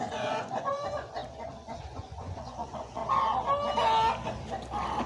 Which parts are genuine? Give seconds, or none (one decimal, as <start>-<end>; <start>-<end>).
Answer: 3.0-5.1